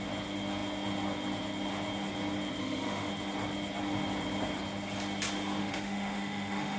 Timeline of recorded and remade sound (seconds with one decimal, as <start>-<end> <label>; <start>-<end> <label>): 0.0-2.6 recorded; 2.6-3.1 remade; 3.1-5.6 recorded; 5.6-6.8 remade